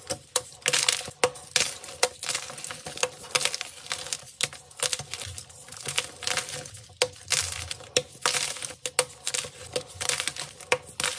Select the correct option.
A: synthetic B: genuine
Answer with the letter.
B